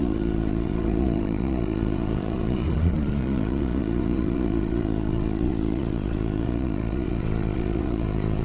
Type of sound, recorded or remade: remade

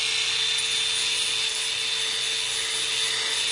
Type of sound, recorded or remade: recorded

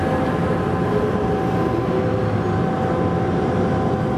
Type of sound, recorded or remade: recorded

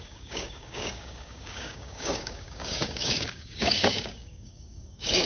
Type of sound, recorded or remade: remade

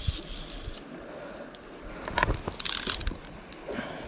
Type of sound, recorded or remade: recorded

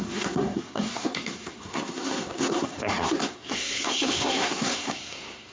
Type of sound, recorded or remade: remade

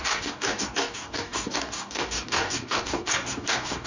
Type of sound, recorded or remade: remade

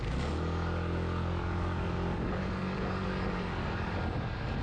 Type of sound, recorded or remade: remade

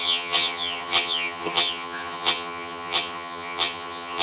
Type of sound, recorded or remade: remade